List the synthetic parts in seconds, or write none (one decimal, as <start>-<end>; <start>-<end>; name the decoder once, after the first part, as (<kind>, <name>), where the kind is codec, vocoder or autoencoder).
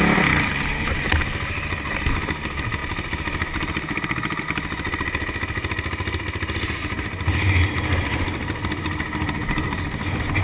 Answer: none